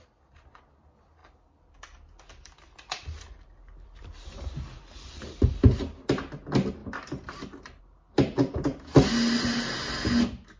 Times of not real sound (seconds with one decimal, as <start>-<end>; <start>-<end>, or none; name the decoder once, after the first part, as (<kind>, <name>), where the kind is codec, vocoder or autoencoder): 1.2-5.4 (vocoder, BigVGAN v2); 6.8-7.8